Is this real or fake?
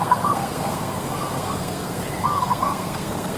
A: fake